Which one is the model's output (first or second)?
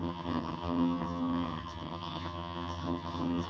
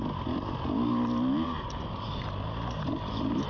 first